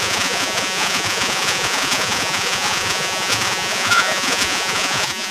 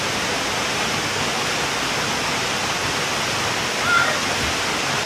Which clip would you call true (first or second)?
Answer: second